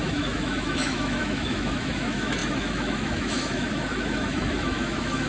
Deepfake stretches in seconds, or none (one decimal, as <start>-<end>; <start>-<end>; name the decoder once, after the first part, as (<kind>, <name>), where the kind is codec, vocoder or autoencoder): 0.0-5.3 (autoencoder, DAC-VAE)